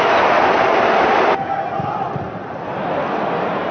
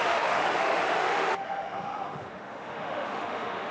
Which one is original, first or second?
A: first